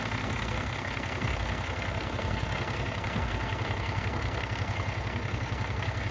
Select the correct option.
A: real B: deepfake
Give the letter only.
B